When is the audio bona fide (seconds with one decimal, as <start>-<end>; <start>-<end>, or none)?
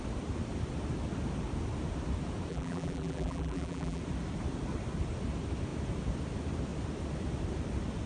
0.0-2.5; 4.0-8.1